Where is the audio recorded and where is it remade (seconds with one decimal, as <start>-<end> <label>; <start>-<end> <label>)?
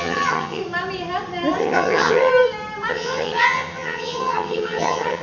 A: 0.0-0.6 remade; 0.6-1.6 recorded; 1.6-2.3 remade; 2.3-2.9 recorded; 2.9-5.2 remade